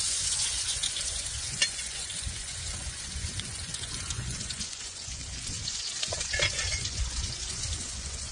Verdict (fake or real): fake